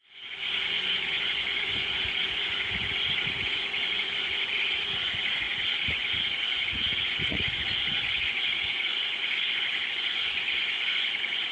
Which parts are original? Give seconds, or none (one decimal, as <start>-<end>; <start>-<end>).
none